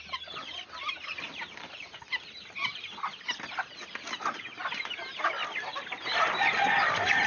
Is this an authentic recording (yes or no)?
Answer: yes